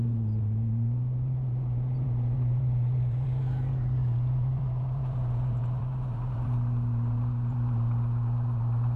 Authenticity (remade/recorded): remade